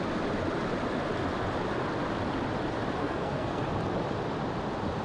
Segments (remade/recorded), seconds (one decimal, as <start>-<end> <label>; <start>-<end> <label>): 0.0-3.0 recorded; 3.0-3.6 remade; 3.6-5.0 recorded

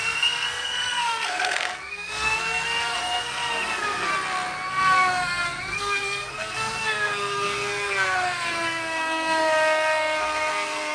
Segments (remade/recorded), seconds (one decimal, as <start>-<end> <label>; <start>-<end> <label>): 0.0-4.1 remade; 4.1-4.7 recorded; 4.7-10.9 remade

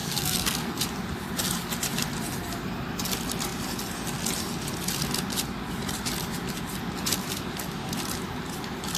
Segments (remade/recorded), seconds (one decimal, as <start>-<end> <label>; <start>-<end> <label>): 0.0-0.8 remade; 0.8-9.0 recorded

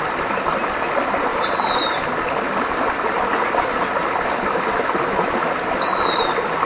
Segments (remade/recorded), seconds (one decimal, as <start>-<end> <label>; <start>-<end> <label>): 0.0-6.7 recorded

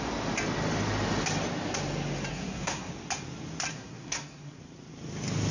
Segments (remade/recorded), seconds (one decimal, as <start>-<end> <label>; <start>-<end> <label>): 0.0-2.3 recorded; 2.3-2.9 remade; 2.9-3.7 recorded; 3.7-4.6 remade; 4.6-5.5 recorded

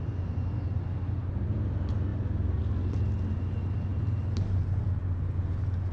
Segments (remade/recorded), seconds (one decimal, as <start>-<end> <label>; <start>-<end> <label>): 0.0-5.9 recorded

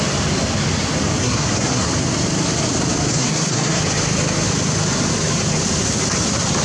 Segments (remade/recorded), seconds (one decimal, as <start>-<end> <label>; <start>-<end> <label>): 0.0-1.2 recorded; 1.2-1.9 remade; 1.9-3.1 recorded; 3.1-3.8 remade; 3.8-6.6 recorded